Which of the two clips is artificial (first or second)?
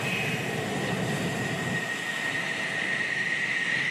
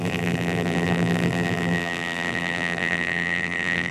second